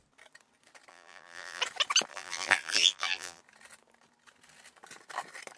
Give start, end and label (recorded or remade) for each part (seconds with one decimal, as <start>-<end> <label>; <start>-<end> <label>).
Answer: 0.0-0.9 recorded; 0.9-1.6 remade; 1.6-2.1 recorded; 2.1-3.4 remade; 3.4-5.6 recorded